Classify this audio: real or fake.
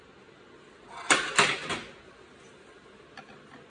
real